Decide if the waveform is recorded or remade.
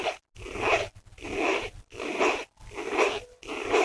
recorded